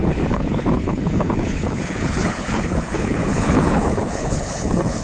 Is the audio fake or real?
fake